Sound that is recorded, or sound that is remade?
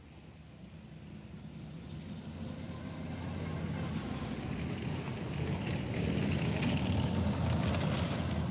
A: recorded